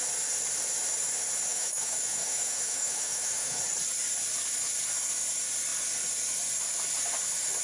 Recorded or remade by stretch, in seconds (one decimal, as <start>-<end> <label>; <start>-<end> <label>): 0.0-1.5 recorded; 1.5-3.6 remade; 3.6-7.6 recorded